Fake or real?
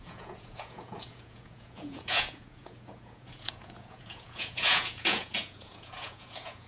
fake